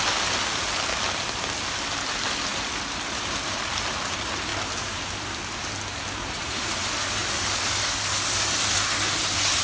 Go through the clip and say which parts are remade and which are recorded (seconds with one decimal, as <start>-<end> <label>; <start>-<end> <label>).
0.0-6.2 recorded; 6.2-6.8 remade; 6.8-9.6 recorded